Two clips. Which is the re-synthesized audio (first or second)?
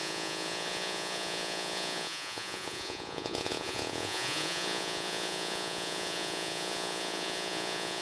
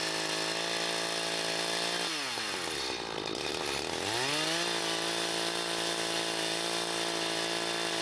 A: first